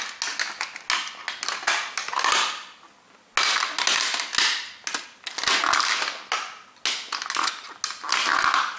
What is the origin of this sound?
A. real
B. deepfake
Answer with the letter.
A